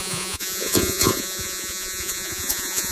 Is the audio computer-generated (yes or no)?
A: yes